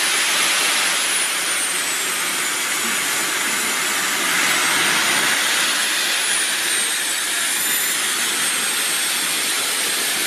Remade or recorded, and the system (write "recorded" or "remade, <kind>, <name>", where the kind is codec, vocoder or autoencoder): recorded